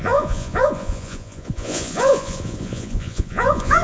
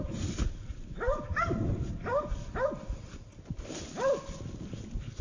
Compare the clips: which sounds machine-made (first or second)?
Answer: first